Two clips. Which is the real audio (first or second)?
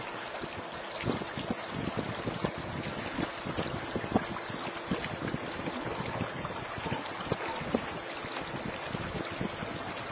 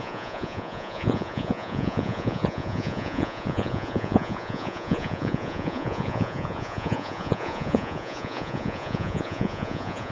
first